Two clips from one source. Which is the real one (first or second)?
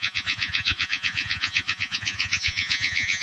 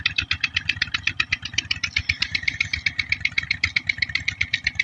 second